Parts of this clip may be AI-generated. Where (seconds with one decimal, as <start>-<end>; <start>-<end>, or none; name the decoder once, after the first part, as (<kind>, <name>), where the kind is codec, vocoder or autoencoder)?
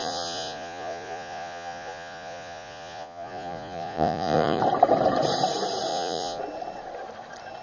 0.0-4.6 (vocoder, Vocos); 5.9-6.4